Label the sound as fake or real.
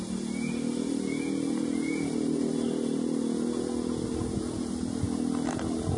real